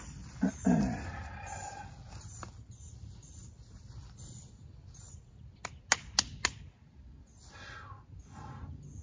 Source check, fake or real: real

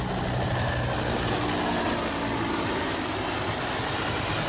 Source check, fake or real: real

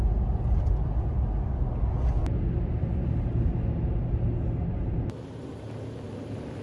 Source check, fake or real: real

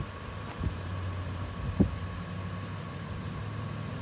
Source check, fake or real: real